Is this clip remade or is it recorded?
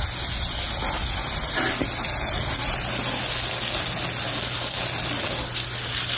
recorded